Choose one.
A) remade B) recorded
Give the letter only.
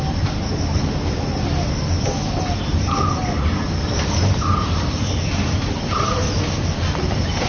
B